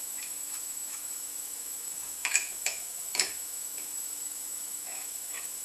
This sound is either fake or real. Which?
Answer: fake